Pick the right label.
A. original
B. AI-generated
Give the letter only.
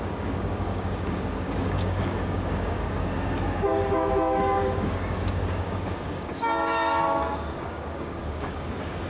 B